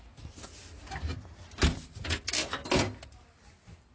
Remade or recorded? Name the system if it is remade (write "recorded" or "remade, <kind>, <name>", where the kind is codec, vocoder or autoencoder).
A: recorded